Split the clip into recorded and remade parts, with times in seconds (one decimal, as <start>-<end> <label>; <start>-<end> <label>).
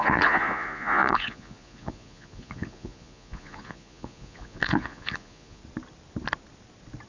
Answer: 0.0-5.6 remade; 5.6-7.1 recorded